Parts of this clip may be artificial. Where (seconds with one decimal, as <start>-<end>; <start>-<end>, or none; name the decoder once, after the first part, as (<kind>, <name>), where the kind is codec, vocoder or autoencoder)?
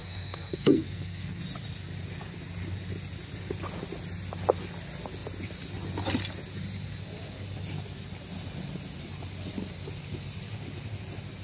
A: 0.0-1.4 (codec, SNAC)